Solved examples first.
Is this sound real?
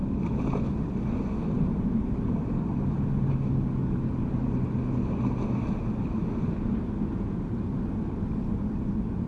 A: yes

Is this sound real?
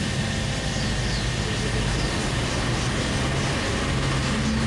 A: yes